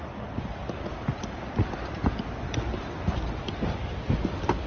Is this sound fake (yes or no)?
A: no